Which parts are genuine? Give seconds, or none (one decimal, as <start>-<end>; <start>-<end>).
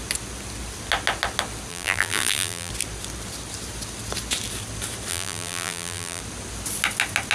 0.0-1.7; 2.7-5.1; 6.2-7.3